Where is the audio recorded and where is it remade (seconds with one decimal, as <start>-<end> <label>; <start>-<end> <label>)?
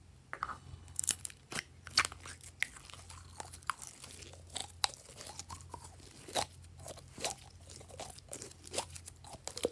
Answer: 0.0-0.4 recorded; 0.4-1.2 remade; 1.2-9.7 recorded